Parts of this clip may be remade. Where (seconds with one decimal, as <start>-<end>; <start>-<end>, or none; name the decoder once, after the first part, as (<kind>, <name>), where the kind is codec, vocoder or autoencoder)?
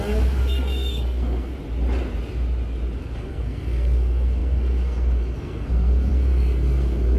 0.0-1.5 (codec, SNAC); 3.0-7.2